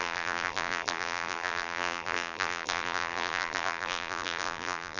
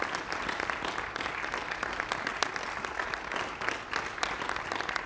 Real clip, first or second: second